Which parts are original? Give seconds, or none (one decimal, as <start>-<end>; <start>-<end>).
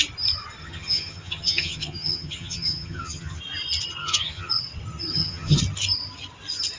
0.0-0.6; 3.4-4.0; 4.5-5.1; 5.6-6.8